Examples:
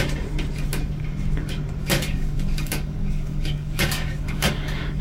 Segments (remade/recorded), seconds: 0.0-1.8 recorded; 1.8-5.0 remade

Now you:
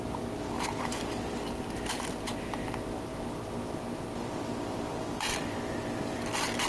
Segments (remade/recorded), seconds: 0.0-6.7 recorded

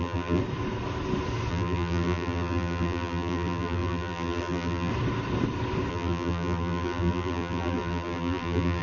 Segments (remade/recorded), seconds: 0.0-0.4 remade; 0.4-1.5 recorded; 1.5-4.9 remade; 4.9-5.9 recorded; 5.9-8.8 remade

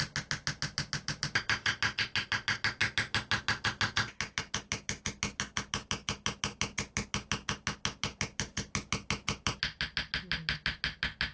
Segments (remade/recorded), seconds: 0.0-11.3 recorded

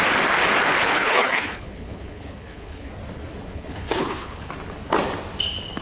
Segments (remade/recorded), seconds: 0.0-0.8 recorded; 0.8-2.9 remade; 2.9-3.5 recorded; 3.5-4.5 remade; 4.5-5.8 recorded

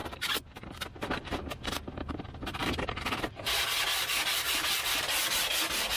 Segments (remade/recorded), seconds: 0.0-6.0 recorded

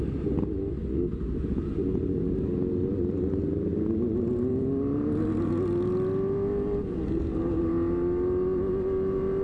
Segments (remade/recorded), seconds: 0.0-9.4 recorded